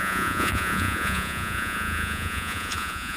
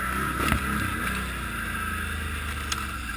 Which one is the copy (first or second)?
first